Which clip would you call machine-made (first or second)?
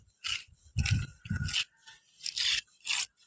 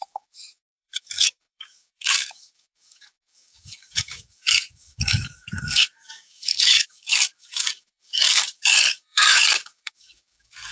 second